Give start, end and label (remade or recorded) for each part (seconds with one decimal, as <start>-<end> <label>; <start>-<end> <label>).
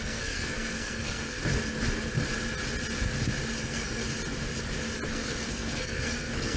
0.0-1.4 remade; 1.4-3.6 recorded; 3.6-4.0 remade; 4.0-5.1 recorded; 5.1-6.6 remade